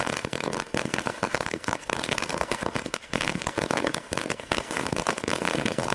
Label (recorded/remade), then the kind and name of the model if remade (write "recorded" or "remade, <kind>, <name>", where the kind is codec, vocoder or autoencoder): remade, codec, SNAC